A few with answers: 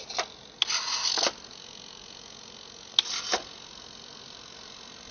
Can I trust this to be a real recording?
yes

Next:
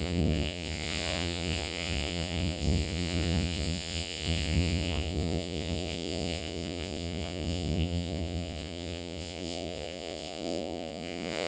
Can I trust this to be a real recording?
no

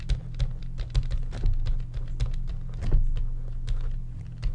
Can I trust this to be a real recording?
yes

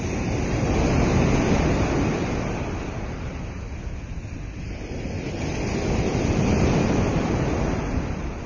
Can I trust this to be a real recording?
yes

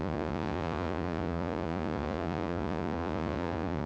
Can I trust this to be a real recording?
no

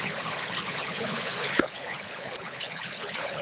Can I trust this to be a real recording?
no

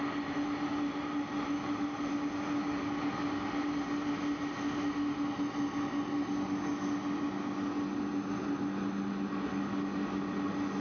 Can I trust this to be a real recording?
yes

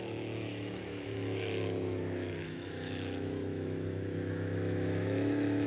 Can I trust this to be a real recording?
no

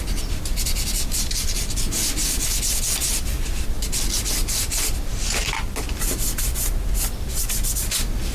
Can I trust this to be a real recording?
yes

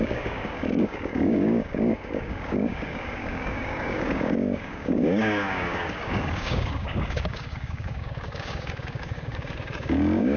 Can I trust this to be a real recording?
no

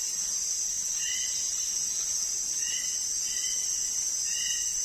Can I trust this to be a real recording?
yes